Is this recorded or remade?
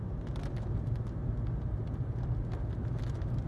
recorded